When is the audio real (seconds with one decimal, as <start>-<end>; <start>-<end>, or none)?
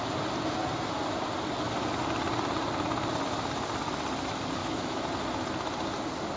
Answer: 0.0-4.6; 5.1-6.4